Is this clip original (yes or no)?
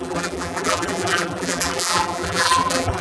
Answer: no